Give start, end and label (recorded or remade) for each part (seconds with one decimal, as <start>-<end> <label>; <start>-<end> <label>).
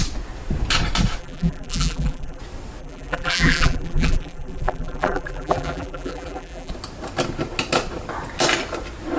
0.0-1.2 recorded; 1.2-2.4 remade; 2.4-2.8 recorded; 2.8-6.7 remade; 6.7-9.2 recorded